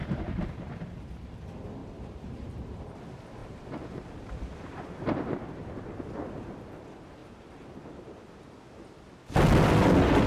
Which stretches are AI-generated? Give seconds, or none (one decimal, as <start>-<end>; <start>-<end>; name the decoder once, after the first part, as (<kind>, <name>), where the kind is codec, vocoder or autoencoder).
0.0-1.1 (vocoder, BigVGAN v2); 1.8-2.9; 3.4-6.6; 7.2-8.5